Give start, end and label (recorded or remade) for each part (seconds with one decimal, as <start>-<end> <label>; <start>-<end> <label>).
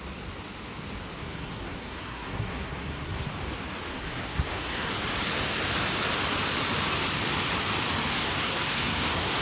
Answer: 0.0-1.2 recorded; 1.2-3.3 remade; 3.3-3.9 recorded; 3.9-4.9 remade; 4.9-8.1 recorded; 8.1-9.4 remade